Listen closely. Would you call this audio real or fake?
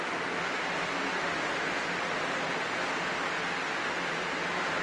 real